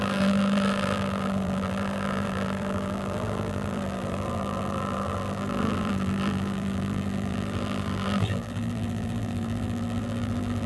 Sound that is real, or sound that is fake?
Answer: fake